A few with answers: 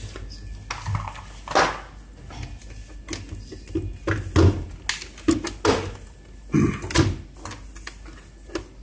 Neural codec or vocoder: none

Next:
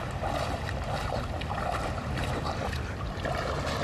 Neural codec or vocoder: none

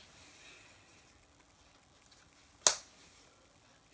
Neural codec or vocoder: none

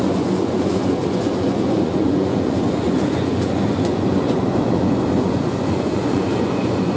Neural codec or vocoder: vocoder, Vocos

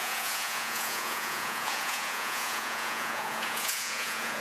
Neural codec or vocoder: vocoder, Vocos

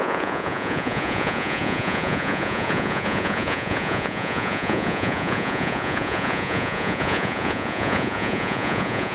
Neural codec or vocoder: vocoder, Vocos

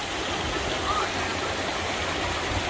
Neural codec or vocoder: none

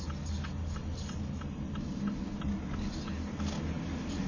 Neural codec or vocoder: none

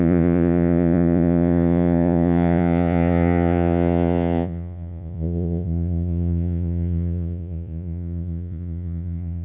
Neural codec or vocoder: vocoder, Vocos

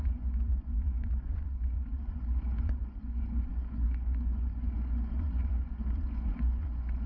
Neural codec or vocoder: vocoder, Vocos